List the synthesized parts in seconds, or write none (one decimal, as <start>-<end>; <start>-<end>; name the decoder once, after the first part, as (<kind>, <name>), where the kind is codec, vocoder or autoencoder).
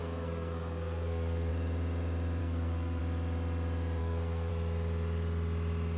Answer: 0.0-1.5 (codec, SNAC); 2.4-3.0; 4.0-4.5